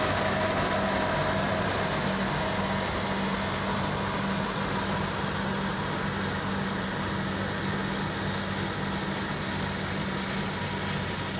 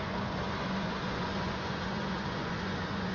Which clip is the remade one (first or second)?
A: second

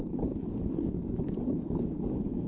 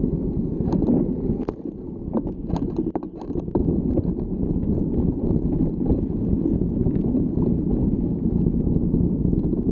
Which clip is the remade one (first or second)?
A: first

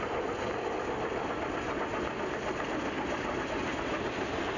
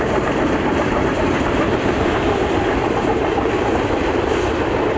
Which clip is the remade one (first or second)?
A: second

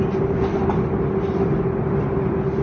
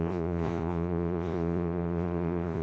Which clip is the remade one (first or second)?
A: second